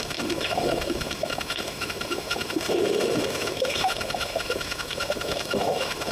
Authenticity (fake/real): fake